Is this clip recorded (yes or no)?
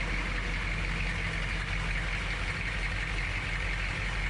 yes